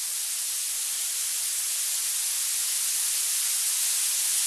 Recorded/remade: recorded